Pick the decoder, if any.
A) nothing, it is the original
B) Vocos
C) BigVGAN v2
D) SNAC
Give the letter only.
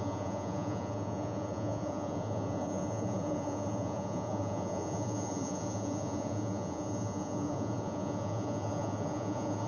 B